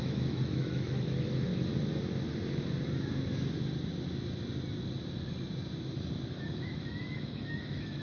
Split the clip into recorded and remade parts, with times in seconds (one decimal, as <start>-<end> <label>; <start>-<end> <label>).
0.0-1.5 remade; 1.5-6.3 recorded; 6.3-8.0 remade